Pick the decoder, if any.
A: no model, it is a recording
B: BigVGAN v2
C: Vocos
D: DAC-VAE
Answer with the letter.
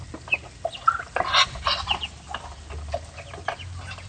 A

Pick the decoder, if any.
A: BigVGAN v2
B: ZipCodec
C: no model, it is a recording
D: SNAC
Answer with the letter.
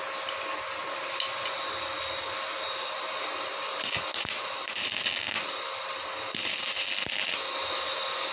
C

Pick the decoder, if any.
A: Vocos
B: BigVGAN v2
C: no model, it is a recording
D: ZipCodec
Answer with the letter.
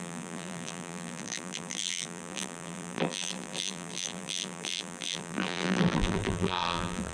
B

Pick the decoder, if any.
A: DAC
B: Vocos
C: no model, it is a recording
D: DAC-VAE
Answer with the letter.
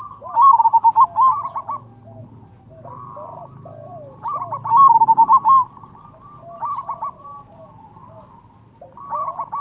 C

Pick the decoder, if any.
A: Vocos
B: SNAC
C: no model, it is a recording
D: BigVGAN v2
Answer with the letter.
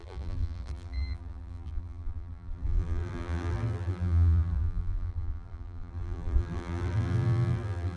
D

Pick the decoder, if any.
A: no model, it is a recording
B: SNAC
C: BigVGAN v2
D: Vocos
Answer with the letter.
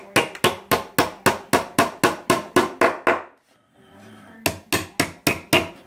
A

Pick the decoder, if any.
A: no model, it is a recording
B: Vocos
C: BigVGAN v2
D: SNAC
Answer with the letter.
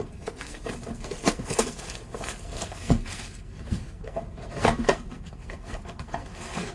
D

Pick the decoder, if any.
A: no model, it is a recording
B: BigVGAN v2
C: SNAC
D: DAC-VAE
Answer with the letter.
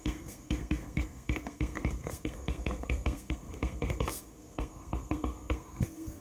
C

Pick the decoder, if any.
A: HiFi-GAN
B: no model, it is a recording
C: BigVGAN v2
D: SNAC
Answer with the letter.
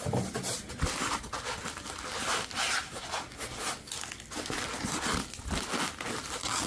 B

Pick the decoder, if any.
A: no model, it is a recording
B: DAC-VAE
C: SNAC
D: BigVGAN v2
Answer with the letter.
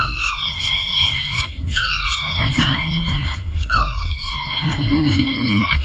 C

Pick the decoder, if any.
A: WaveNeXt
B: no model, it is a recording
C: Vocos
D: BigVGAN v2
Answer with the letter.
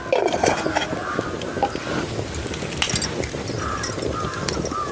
B